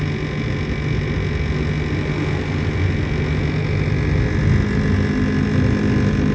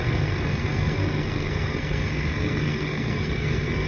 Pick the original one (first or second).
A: first